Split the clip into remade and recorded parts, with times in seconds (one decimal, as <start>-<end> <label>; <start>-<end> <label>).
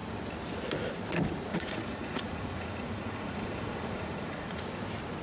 0.0-1.5 recorded; 1.5-4.6 remade; 4.6-5.2 recorded